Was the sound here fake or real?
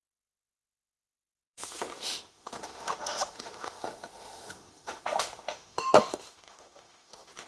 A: fake